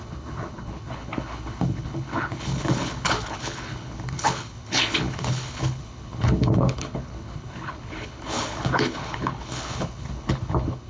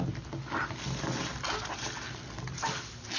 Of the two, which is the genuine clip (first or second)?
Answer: second